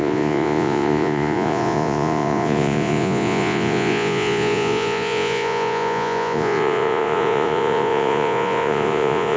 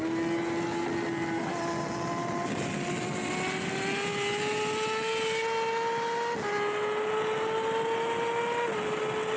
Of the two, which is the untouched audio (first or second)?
second